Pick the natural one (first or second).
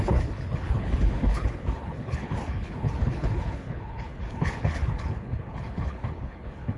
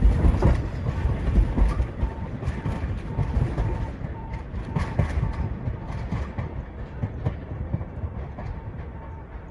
second